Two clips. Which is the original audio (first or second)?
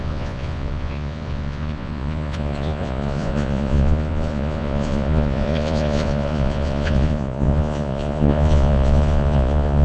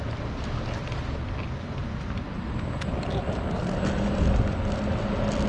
second